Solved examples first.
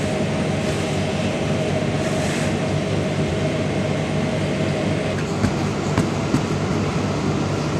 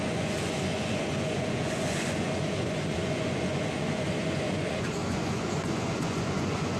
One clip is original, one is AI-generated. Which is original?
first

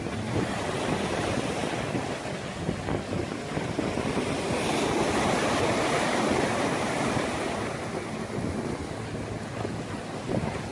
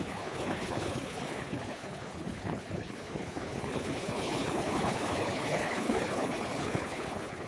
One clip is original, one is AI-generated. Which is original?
first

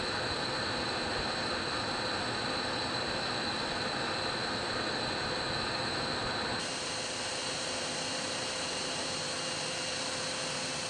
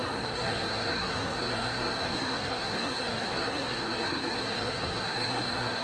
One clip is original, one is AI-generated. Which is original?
first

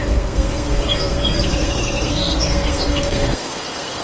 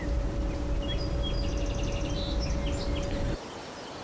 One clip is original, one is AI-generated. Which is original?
second